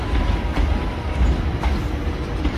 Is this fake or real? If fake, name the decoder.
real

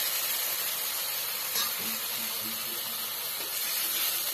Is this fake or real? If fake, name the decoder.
real